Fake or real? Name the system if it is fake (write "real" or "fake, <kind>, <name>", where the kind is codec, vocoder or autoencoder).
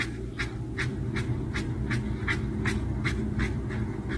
real